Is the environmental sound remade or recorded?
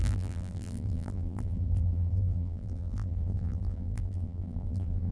remade